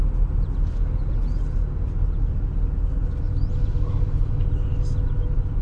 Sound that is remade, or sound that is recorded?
recorded